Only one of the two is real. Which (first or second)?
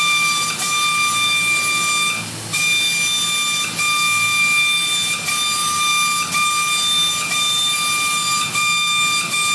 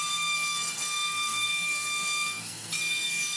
first